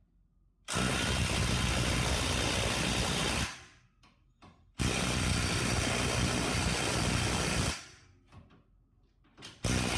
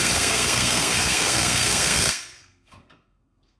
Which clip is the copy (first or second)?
second